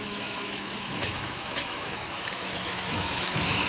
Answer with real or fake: fake